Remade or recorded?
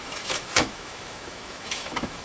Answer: remade